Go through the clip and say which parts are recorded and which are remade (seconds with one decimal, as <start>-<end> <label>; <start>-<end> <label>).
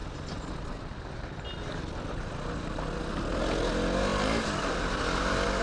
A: 0.0-5.6 recorded